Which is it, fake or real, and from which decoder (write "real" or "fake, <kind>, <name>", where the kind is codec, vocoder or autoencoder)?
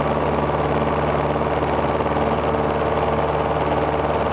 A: real